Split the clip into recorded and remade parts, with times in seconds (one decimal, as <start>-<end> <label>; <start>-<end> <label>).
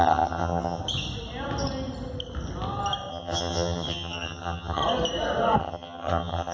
0.0-0.8 remade; 0.8-3.1 recorded; 3.1-4.8 remade; 4.8-5.6 recorded; 5.6-6.5 remade